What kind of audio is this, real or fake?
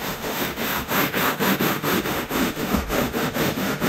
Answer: fake